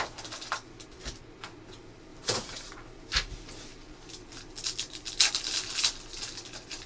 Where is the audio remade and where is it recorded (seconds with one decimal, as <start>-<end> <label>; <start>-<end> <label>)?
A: 0.0-2.1 recorded; 2.1-2.7 remade; 2.7-6.9 recorded